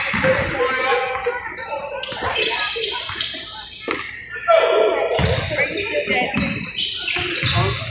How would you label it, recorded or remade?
recorded